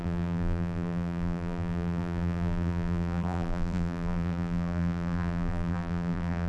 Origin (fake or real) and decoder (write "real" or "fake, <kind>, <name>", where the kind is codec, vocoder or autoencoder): fake, vocoder, BigVGAN v2